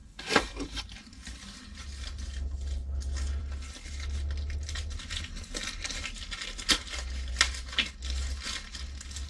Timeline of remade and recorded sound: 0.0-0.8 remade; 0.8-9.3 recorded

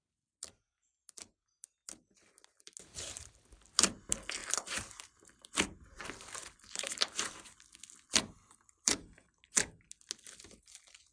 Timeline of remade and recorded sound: 0.0-4.4 recorded; 4.4-7.6 remade; 7.6-11.1 recorded

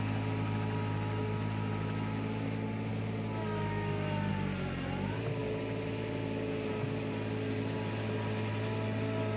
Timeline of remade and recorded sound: 0.0-9.4 recorded

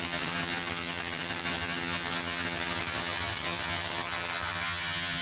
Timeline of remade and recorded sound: 0.0-5.2 remade